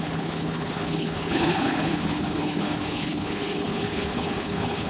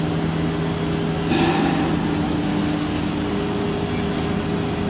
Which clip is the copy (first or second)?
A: first